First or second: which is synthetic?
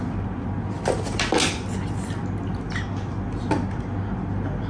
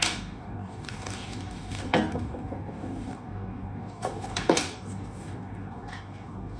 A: second